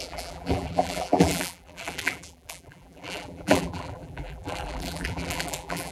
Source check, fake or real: fake